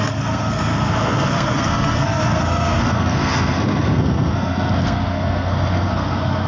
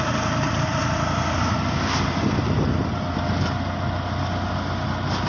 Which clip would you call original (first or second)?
second